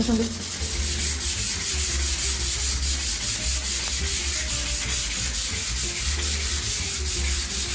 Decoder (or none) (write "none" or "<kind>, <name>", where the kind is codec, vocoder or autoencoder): none